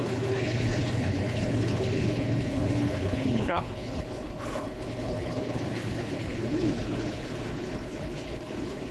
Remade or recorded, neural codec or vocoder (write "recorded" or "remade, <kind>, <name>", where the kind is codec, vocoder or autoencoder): remade, codec, HILCodec